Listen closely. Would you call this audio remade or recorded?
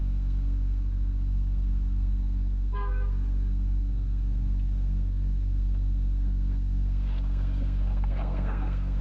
remade